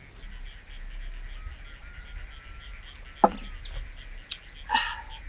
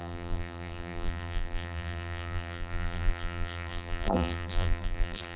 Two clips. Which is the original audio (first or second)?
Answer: first